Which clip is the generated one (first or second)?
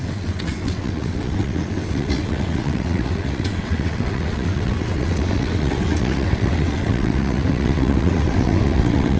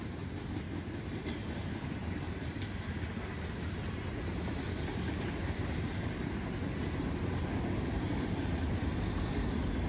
first